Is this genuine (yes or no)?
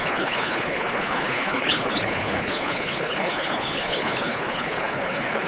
no